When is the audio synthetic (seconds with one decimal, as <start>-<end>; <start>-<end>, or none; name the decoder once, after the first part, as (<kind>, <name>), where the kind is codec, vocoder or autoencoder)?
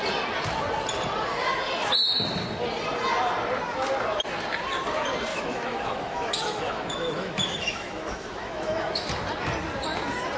5.3-9.1 (autoencoder, DAC-VAE)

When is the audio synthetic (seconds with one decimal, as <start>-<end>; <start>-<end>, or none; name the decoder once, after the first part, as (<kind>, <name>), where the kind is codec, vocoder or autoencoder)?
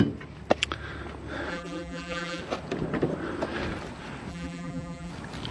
1.5-2.4 (vocoder, BigVGAN v2); 4.3-5.1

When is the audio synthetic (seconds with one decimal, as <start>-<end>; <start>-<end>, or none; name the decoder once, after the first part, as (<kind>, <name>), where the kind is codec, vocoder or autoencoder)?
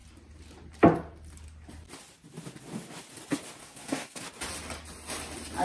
3.6-4.2 (codec, SNAC)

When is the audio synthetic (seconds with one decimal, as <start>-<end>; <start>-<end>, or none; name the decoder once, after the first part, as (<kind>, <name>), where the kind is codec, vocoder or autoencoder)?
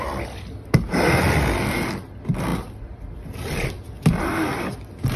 none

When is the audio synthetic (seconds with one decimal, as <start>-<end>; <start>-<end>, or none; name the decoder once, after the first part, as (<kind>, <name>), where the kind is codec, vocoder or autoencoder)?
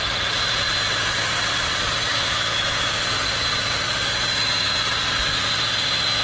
2.1-2.9 (autoencoder, DAC-VAE)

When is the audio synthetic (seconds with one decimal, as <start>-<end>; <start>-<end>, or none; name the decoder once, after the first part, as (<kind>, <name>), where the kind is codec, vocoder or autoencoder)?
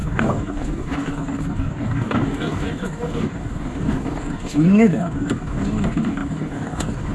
0.0-7.1 (codec, DAC)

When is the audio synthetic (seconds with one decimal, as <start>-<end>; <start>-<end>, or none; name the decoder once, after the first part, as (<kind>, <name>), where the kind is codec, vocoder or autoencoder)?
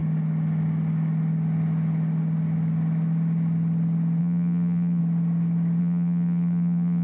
4.2-5.0 (vocoder, BigVGAN v2); 5.8-7.0